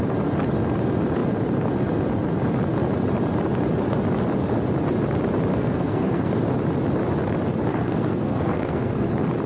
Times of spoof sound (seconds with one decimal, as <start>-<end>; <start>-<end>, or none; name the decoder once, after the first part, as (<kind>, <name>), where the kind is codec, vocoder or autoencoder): 5.5-6.4 (codec, SNAC); 7.7-9.1